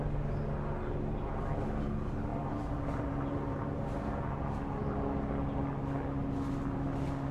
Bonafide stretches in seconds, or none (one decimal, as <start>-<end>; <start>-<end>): 0.0-2.3; 4.0-7.3